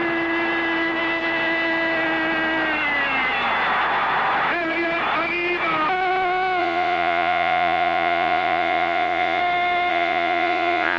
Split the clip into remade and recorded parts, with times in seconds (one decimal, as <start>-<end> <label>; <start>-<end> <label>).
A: 0.0-6.6 recorded; 6.6-9.4 remade; 9.4-9.9 recorded; 9.9-11.0 remade

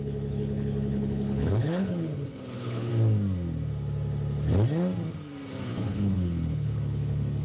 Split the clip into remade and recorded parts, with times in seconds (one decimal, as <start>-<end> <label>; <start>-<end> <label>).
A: 0.0-2.9 remade; 2.9-5.7 recorded; 5.7-7.4 remade

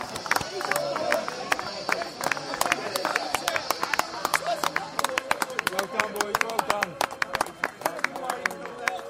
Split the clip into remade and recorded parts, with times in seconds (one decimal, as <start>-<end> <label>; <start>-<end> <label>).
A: 0.0-1.1 recorded; 1.1-2.2 remade; 2.2-3.1 recorded; 3.1-3.8 remade; 3.8-4.3 recorded; 4.3-7.1 remade; 7.1-9.1 recorded

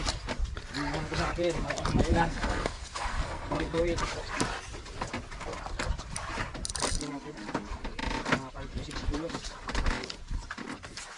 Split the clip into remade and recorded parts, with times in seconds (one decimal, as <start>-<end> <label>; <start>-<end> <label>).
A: 0.0-2.1 recorded; 2.1-3.8 remade; 3.8-11.2 recorded

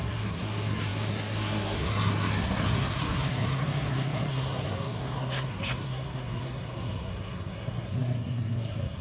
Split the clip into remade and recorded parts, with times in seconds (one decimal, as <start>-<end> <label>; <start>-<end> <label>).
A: 0.0-9.0 remade